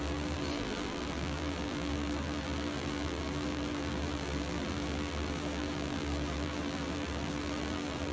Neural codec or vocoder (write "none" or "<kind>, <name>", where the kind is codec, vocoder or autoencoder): vocoder, BigVGAN v2